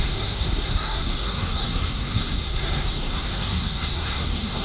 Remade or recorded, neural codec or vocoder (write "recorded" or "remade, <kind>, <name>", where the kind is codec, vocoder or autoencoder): remade, codec, SNAC